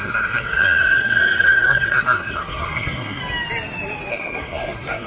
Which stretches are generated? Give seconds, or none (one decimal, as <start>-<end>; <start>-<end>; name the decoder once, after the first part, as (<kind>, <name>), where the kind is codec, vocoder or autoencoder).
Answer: 0.0-3.2 (codec, SNAC); 4.1-5.1